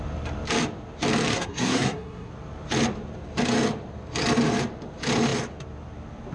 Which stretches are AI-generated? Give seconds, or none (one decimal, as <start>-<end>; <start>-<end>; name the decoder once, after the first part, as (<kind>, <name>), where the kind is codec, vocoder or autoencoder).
1.3-2.3 (codec, SNAC)